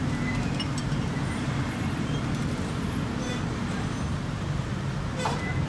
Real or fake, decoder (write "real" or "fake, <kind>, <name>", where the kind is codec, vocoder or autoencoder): fake, vocoder, BigVGAN v2